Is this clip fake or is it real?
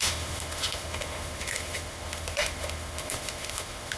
fake